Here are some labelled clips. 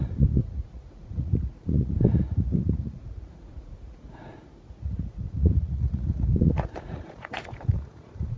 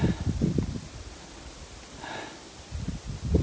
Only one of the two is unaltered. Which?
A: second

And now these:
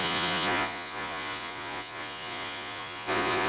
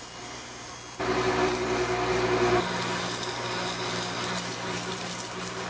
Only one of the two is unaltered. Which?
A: second